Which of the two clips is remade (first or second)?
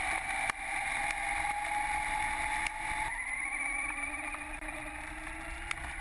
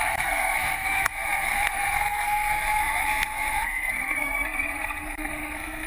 second